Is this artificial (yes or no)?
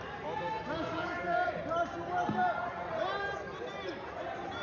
no